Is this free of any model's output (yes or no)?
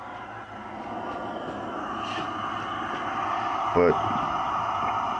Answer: yes